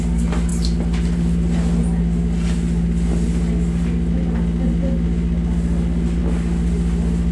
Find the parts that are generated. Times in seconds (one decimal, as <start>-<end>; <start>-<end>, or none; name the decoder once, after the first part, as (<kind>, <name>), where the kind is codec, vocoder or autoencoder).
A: none